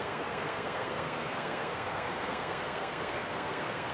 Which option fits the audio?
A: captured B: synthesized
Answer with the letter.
B